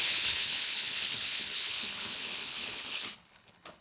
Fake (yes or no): yes